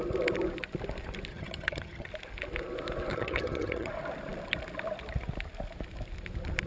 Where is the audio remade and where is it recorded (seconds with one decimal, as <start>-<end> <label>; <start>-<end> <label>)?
0.0-1.3 recorded; 1.3-2.1 remade; 2.1-3.1 recorded; 3.1-3.9 remade; 3.9-6.7 recorded